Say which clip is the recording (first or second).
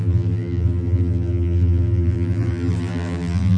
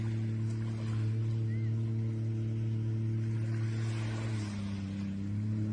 second